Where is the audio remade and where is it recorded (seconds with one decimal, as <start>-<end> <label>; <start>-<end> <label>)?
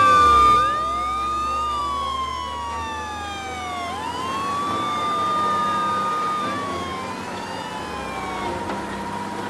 0.0-9.5 recorded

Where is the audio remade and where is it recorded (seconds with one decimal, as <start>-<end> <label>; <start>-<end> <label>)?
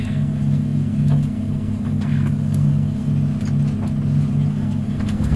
0.0-3.1 remade; 3.1-4.5 recorded; 4.5-5.4 remade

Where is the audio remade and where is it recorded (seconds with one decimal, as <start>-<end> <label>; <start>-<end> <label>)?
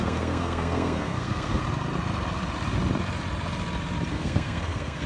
0.0-1.6 remade; 1.6-4.1 recorded; 4.1-5.1 remade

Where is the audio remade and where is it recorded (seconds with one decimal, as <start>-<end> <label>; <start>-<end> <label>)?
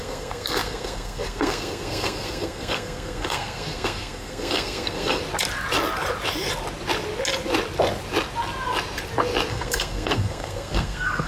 0.0-5.2 remade; 5.2-9.5 recorded; 9.5-11.3 remade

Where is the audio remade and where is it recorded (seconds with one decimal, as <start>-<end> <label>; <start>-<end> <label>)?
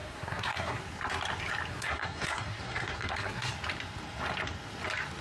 0.0-0.8 remade; 0.8-1.7 recorded; 1.7-3.5 remade; 3.5-5.2 recorded